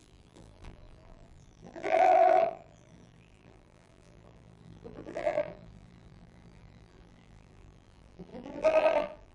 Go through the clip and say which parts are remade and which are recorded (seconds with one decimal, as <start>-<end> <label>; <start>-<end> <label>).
0.0-9.3 remade